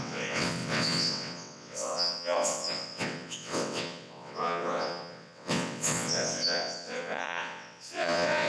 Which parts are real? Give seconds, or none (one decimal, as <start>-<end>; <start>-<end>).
none

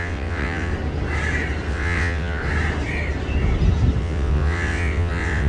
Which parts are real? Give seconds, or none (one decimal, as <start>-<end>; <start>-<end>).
0.7-1.7; 2.4-4.0

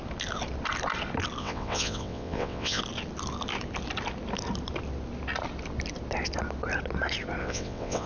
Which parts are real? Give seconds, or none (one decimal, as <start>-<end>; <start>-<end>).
0.0-1.4; 2.8-7.4

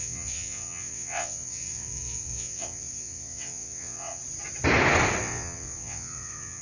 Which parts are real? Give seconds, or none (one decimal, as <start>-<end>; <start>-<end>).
4.2-5.2

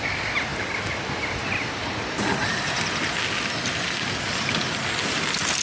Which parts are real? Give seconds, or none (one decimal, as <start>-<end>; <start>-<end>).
0.0-5.6

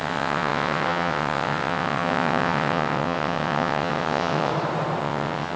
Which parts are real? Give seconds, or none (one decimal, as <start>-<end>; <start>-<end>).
4.5-5.0

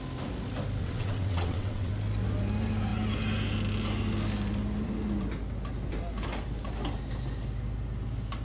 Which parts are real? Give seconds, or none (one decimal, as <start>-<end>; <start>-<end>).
0.0-0.8; 1.9-8.4